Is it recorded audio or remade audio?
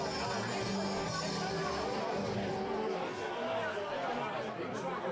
recorded